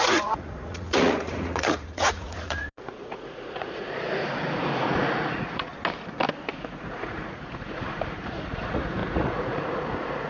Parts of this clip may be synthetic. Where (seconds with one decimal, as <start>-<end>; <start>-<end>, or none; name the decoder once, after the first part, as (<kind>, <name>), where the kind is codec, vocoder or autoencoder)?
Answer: 0.0-5.7 (vocoder, Vocos); 6.5-10.3